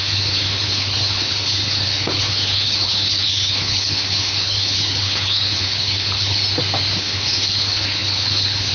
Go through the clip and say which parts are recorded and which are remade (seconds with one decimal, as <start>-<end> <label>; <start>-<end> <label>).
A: 0.0-6.4 remade; 6.4-7.0 recorded; 7.0-8.7 remade